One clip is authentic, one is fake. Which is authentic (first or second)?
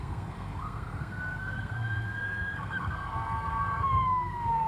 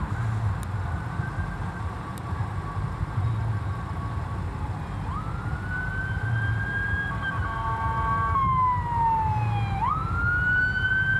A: second